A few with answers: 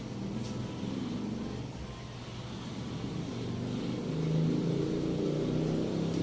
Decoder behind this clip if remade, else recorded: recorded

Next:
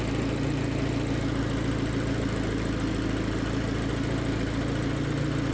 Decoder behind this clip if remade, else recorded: recorded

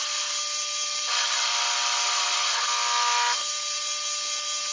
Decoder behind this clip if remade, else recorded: recorded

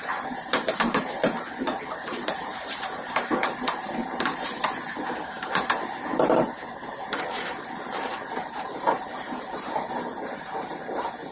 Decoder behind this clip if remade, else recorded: remade, vocoder, BigVGAN v2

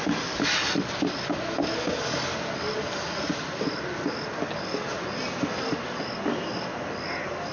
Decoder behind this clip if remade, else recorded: recorded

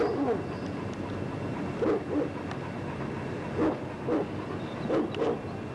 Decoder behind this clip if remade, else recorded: recorded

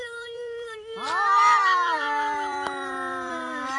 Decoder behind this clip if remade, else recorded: remade, vocoder, BigVGAN v2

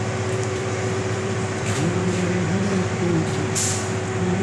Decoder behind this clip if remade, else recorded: remade, vocoder, BigVGAN v2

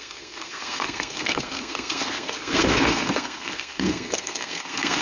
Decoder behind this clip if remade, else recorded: remade, codec, SNAC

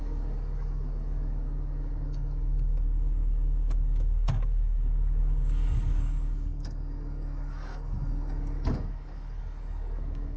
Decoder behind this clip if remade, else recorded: remade, codec, DAC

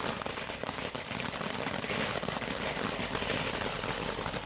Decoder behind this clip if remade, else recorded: recorded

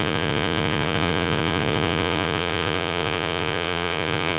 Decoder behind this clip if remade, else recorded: remade, vocoder, Vocos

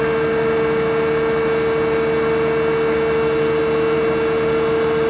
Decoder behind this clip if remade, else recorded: recorded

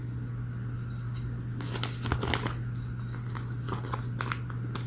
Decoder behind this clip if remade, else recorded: recorded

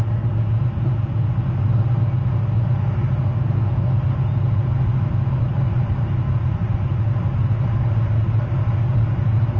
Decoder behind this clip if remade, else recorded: recorded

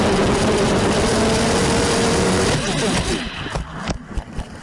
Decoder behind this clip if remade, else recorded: recorded